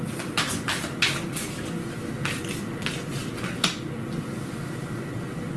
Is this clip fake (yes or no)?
no